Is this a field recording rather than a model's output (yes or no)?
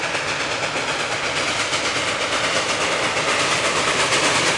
yes